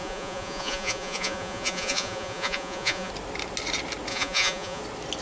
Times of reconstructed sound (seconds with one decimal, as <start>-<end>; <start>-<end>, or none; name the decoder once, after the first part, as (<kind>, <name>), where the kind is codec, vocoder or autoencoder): 0.0-3.1 (vocoder, Vocos); 4.1-4.8